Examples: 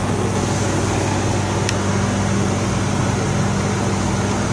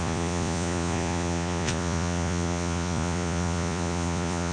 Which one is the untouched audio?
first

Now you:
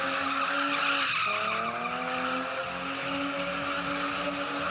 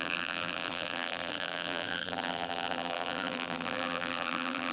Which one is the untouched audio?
first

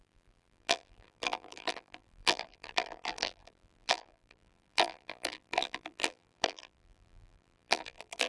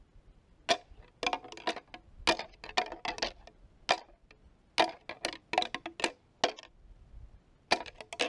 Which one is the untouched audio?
second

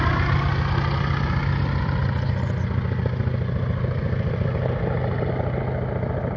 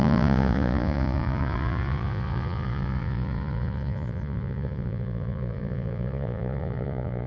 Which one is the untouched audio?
first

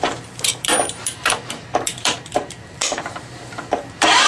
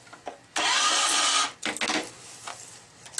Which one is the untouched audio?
second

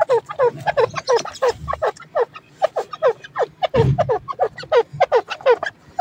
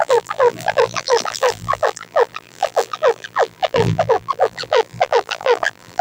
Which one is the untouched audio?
first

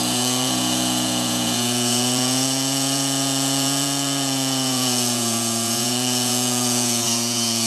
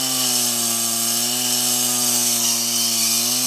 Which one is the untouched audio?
second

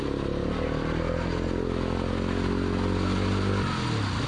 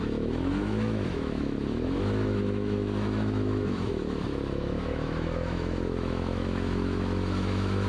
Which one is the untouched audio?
first